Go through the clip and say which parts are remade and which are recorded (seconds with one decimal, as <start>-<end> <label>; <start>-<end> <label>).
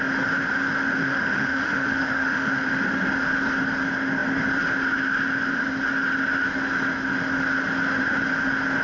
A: 0.0-1.0 recorded; 1.0-2.7 remade; 2.7-8.8 recorded